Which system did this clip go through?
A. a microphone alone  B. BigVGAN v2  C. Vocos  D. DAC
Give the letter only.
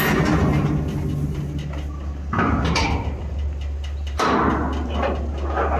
A